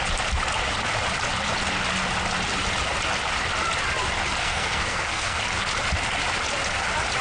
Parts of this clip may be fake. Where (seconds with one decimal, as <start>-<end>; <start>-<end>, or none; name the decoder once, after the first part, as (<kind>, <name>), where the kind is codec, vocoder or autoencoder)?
4.4-5.4 (codec, SNAC)